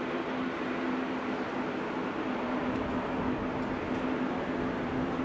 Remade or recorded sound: recorded